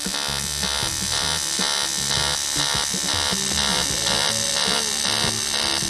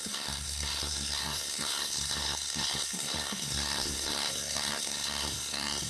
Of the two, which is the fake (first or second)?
second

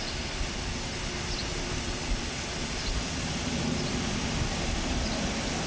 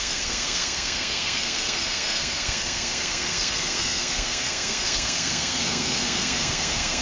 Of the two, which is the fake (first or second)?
second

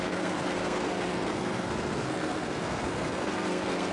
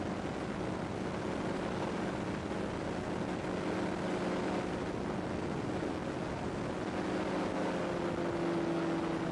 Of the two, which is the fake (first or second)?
first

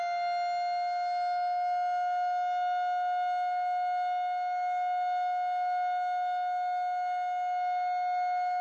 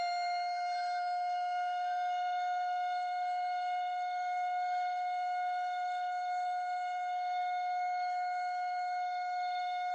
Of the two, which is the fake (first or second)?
second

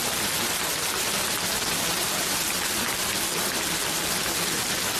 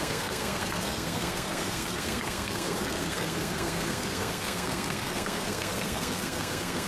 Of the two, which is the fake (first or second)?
second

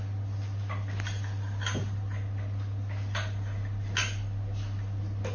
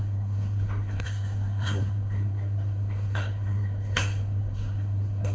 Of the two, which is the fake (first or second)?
second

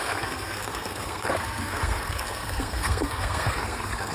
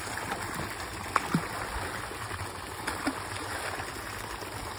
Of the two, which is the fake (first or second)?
first